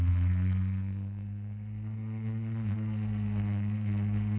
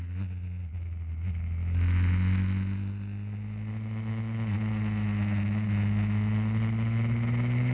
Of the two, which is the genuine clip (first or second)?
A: second